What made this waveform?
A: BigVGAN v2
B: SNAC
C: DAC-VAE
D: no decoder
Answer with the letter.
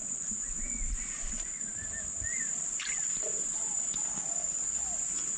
D